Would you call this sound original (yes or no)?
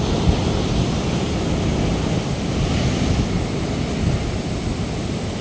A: yes